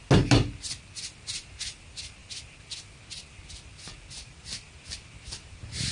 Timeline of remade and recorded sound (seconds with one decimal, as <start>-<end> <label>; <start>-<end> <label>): 0.0-5.9 recorded